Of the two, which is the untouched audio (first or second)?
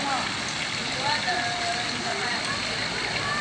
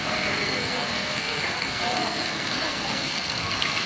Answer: first